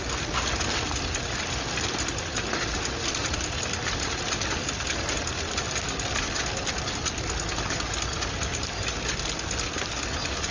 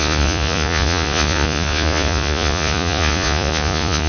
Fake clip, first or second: second